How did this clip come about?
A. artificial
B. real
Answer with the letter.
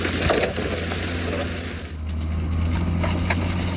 B